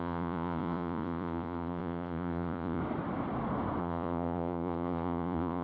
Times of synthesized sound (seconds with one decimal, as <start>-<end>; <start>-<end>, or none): 0.0-2.8; 3.8-5.6